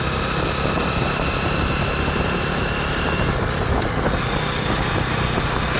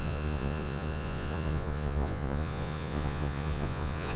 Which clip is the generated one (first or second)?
second